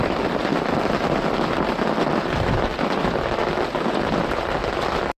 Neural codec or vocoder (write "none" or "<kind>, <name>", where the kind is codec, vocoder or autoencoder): none